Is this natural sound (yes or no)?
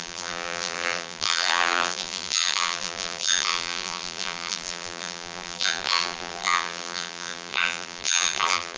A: no